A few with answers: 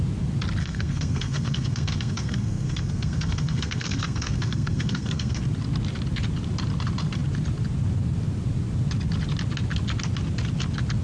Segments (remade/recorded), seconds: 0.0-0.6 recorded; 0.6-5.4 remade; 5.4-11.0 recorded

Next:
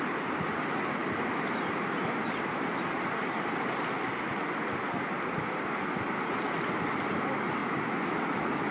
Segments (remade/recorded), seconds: 0.0-8.7 recorded

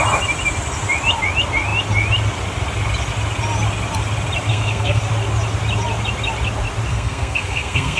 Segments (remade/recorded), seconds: 0.0-4.5 recorded; 4.5-5.0 remade; 5.0-6.9 recorded; 6.9-8.0 remade

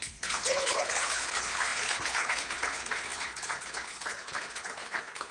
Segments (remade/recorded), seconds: 0.0-5.3 remade

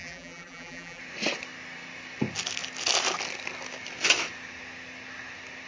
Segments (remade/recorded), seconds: 0.0-1.0 remade; 1.0-5.7 recorded

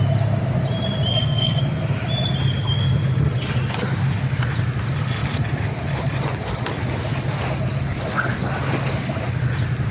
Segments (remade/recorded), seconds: 0.0-1.1 recorded; 1.1-1.6 remade; 1.6-9.9 recorded

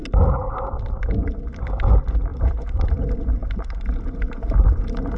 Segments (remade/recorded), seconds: 0.0-1.2 recorded; 1.2-1.7 remade; 1.7-2.3 recorded; 2.3-2.9 remade; 2.9-3.4 recorded; 3.4-5.2 remade